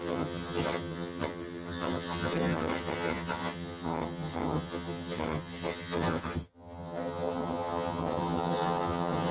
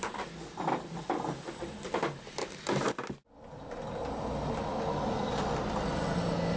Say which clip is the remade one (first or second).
first